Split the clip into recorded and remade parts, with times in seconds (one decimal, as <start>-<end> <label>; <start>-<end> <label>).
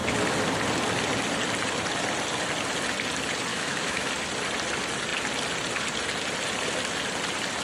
0.0-3.5 recorded; 3.5-4.1 remade; 4.1-7.6 recorded